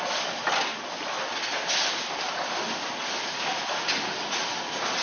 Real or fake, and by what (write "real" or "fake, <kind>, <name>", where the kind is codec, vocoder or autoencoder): real